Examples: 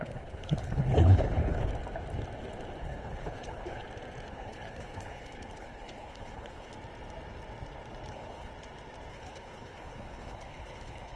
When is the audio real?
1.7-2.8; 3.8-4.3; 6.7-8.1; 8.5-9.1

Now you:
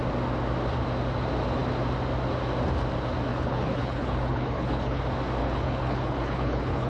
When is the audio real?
0.0-3.3; 5.0-5.4

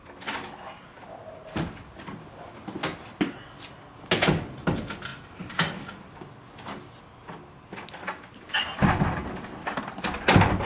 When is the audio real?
0.0-10.7